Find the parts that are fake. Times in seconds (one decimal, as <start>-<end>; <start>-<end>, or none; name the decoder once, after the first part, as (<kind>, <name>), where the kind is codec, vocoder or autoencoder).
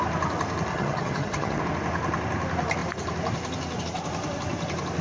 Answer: 0.7-1.6 (vocoder, HiFi-GAN)